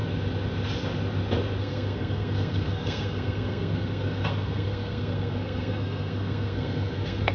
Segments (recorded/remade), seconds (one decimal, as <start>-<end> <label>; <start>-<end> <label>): 0.0-1.6 recorded; 1.6-7.3 remade